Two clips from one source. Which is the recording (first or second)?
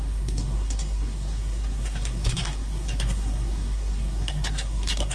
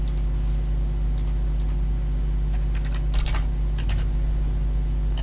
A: second